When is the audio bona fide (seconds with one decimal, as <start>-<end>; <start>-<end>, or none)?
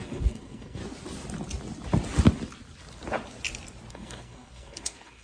0.8-3.9